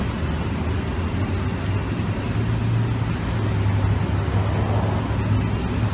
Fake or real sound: real